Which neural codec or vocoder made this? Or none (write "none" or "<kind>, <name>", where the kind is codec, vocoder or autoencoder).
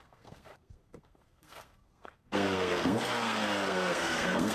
codec, SNAC